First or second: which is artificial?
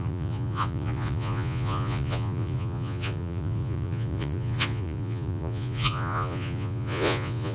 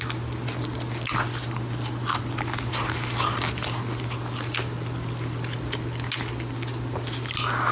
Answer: first